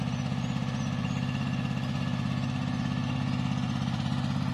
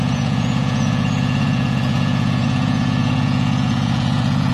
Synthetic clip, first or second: second